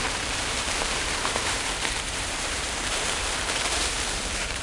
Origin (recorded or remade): remade